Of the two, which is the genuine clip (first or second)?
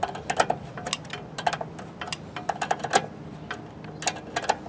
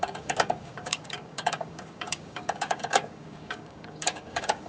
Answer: first